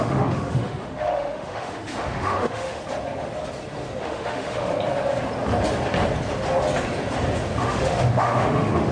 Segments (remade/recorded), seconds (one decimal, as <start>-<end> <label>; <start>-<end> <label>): 0.0-2.8 remade; 2.8-4.0 recorded; 4.0-4.7 remade; 4.7-7.6 recorded; 7.6-8.9 remade